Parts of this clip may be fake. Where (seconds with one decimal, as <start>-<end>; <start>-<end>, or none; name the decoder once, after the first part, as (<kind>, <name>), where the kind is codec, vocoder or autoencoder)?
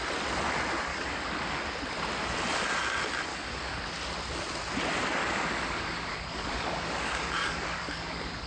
0.9-1.6 (codec, DAC); 3.3-3.8; 5.2-8.5